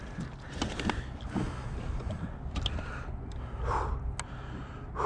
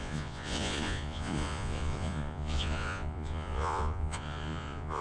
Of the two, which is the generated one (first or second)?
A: second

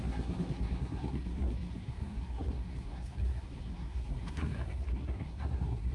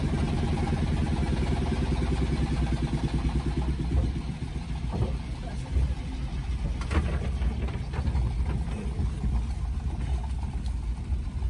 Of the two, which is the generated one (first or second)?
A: first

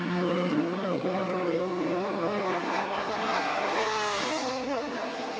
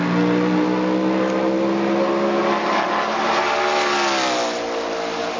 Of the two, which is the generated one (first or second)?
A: first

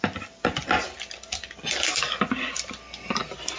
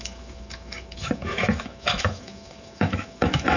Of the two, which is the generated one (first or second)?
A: second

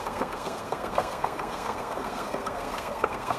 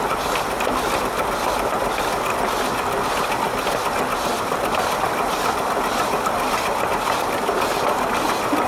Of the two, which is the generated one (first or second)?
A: first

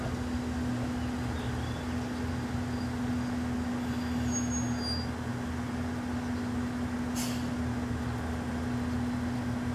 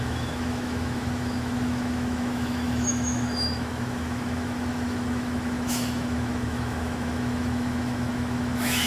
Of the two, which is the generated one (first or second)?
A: second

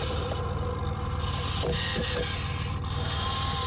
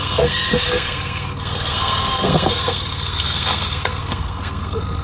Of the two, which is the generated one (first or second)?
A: second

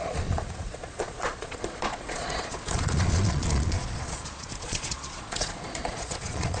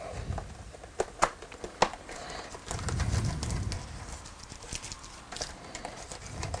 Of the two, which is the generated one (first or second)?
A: first